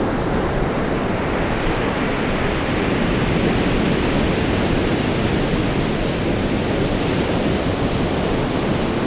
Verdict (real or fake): real